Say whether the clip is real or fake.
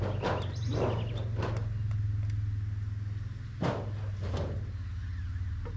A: real